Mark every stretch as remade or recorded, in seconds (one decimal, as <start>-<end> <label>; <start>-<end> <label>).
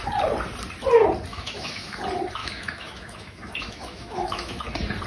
0.0-1.3 recorded; 1.3-2.0 remade; 2.0-2.4 recorded; 2.4-4.6 remade; 4.6-5.1 recorded